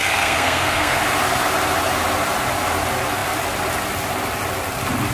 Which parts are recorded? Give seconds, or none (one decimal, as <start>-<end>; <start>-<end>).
1.0-5.1